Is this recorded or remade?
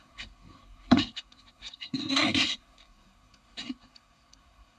remade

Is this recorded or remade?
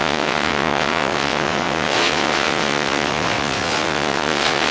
remade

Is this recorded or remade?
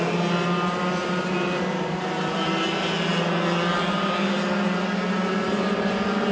recorded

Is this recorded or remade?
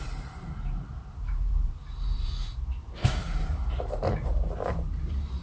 remade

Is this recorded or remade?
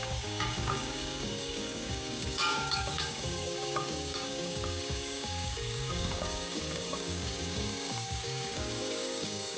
remade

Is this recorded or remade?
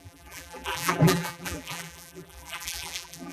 remade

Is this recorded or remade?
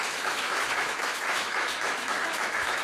remade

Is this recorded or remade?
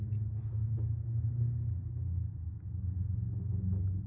recorded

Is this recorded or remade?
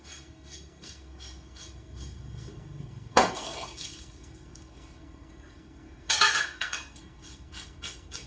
remade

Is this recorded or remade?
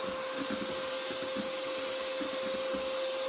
recorded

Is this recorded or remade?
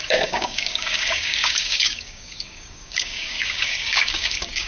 remade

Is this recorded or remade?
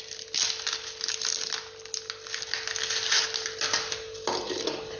recorded